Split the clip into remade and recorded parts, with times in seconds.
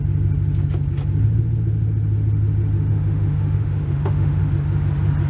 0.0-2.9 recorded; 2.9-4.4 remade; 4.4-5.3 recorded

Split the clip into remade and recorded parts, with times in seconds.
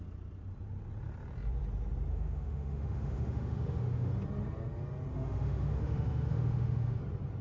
0.0-2.1 recorded; 2.1-4.1 remade; 4.1-5.1 recorded; 5.1-7.0 remade; 7.0-7.4 recorded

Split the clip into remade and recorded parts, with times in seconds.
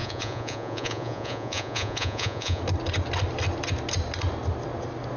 0.0-2.6 remade; 2.6-5.2 recorded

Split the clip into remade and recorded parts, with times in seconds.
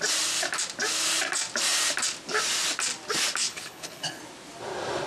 0.0-3.4 recorded; 3.4-4.2 remade; 4.2-5.1 recorded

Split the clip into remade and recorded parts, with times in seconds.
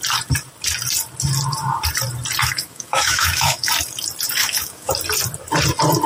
0.0-2.4 recorded; 2.4-3.7 remade; 3.7-4.4 recorded; 4.4-4.9 remade; 4.9-6.1 recorded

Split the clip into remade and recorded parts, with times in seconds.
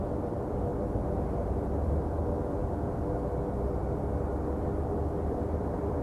0.0-0.7 remade; 0.7-1.5 recorded; 1.5-2.6 remade; 2.6-5.1 recorded; 5.1-6.0 remade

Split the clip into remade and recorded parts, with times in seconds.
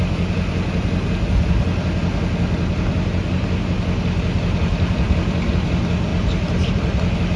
0.0-7.4 recorded